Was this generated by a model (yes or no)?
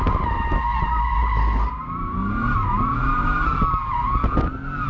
no